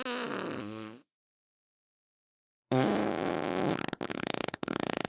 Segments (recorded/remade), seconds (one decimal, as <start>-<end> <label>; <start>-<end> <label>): 0.0-0.6 recorded; 0.6-2.9 remade; 2.9-4.1 recorded; 4.1-5.1 remade